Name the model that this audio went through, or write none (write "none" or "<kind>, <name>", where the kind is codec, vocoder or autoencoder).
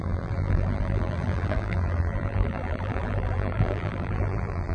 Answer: vocoder, BigVGAN v2